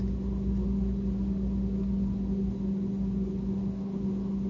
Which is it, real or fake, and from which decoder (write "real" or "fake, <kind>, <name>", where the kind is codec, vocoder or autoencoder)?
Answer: real